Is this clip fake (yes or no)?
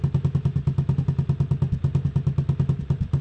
no